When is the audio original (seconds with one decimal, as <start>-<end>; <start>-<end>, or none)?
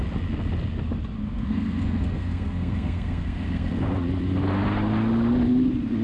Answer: 0.0-1.2; 3.7-6.0